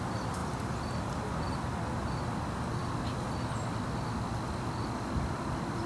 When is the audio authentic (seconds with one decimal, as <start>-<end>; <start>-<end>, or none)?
0.0-5.9